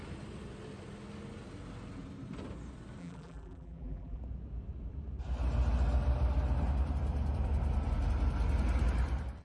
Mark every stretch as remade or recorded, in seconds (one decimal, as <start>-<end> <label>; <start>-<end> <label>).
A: 0.0-3.0 recorded; 3.0-4.2 remade; 4.2-9.4 recorded